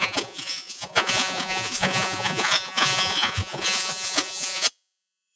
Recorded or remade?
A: remade